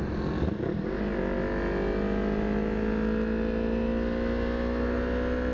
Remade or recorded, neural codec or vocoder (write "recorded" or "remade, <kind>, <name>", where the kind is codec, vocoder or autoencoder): recorded